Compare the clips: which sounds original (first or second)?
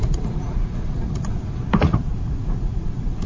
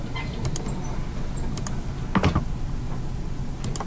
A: second